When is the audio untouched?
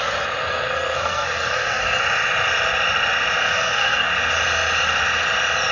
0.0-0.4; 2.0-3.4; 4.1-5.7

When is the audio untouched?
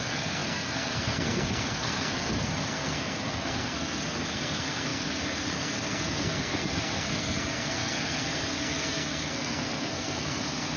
none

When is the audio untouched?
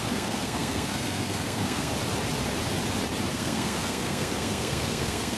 1.9-3.3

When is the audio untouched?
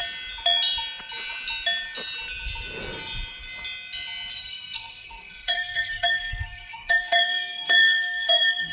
0.0-4.4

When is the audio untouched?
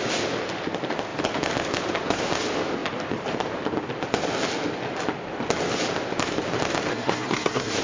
0.0-6.9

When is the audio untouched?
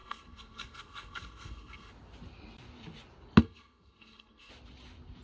1.9-3.4; 4.5-5.2